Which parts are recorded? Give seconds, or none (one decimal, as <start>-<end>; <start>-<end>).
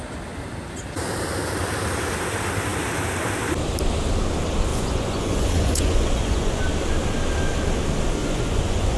0.0-4.7; 6.6-8.2